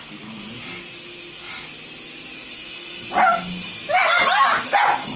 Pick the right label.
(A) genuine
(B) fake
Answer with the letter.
A